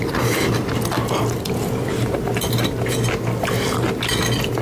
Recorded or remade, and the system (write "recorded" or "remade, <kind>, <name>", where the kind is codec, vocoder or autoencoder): recorded